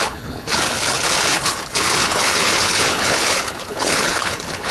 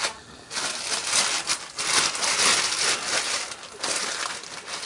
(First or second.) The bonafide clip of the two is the second